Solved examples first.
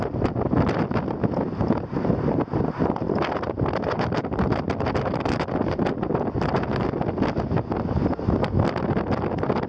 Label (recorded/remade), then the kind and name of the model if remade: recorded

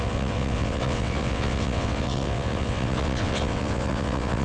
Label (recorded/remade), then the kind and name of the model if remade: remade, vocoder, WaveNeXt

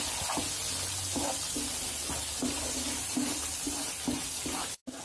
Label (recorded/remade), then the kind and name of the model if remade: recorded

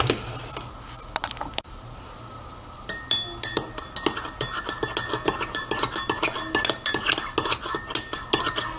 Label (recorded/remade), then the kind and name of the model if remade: recorded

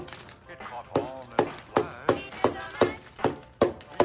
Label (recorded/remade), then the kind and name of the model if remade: recorded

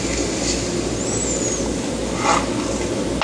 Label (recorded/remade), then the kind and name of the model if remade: recorded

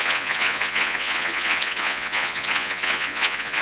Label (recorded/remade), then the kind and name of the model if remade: remade, vocoder, Vocos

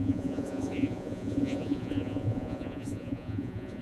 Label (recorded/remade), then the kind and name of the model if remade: remade, vocoder, Vocos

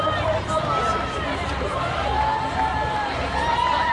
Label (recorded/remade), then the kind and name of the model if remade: recorded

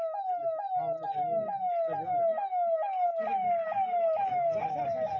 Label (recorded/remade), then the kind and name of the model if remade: recorded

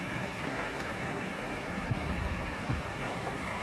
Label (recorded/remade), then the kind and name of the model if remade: remade, codec, SNAC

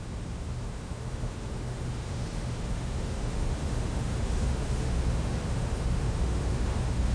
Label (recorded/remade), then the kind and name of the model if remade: remade, autoencoder, DAC-VAE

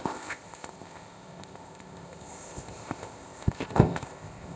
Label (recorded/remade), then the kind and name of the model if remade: remade, codec, ZipCodec